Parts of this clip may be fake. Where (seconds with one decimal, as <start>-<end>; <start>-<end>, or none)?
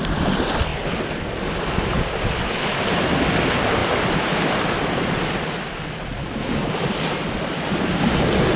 none